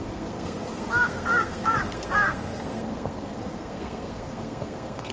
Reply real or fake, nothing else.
fake